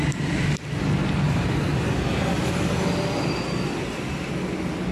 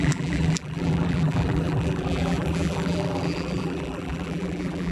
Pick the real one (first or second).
first